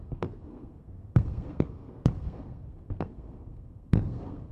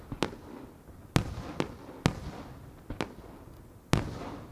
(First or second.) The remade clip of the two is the first